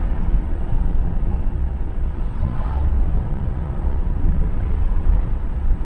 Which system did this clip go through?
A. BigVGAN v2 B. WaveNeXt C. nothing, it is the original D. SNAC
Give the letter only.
B